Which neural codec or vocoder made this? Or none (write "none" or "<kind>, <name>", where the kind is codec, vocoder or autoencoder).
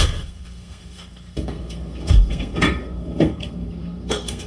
codec, SNAC